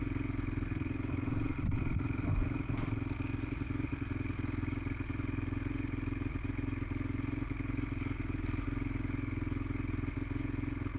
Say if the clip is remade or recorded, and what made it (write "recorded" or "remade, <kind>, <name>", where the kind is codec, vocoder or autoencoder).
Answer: recorded